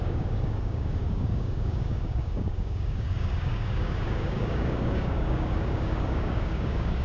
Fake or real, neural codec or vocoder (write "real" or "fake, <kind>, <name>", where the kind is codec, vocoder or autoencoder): fake, codec, DAC